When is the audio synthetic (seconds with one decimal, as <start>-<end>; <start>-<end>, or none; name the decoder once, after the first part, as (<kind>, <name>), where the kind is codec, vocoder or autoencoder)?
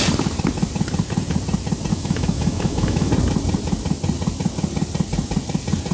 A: 1.9-3.1 (autoencoder, DAC-VAE)